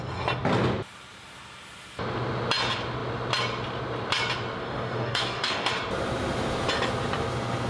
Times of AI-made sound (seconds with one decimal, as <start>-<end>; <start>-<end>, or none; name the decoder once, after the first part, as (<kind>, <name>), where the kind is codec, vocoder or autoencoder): 4.6-5.7 (codec, DAC)